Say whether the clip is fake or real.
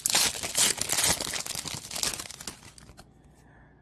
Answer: real